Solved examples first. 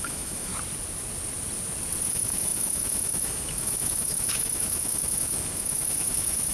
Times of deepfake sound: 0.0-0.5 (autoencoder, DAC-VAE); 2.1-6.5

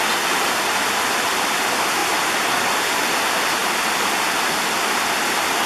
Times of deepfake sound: none

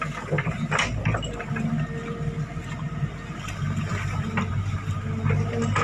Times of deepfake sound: none

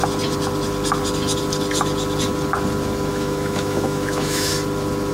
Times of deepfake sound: 3.1-4.5 (autoencoder, DAC-VAE)

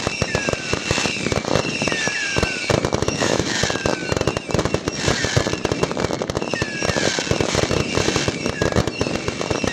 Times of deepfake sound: 3.0-3.6 (autoencoder, DAC-VAE)

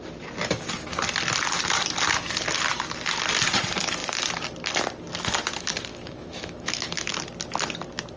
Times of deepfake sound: 5.9-7.2 (autoencoder, DAC-VAE)

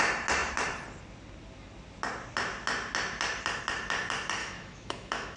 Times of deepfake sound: 4.4-5.4 (autoencoder, DAC-VAE)

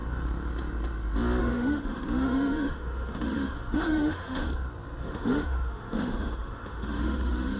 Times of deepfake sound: 1.4-4.5 (autoencoder, DAC-VAE); 5.0-7.6